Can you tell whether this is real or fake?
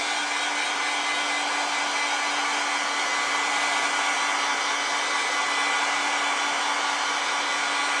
real